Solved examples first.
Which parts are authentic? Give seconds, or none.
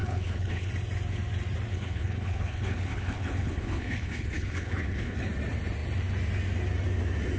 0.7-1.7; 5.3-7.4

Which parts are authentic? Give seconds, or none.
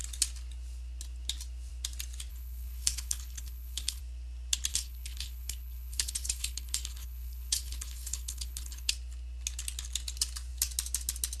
0.0-2.3; 4.0-4.7; 8.9-11.4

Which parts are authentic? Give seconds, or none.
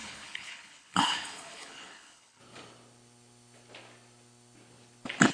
2.4-5.3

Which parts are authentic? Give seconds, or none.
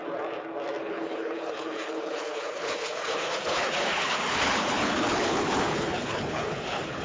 0.0-0.8